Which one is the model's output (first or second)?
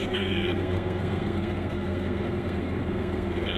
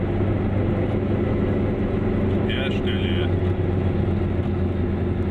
first